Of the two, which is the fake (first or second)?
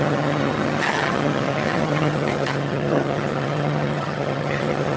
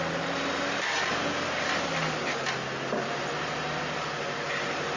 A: first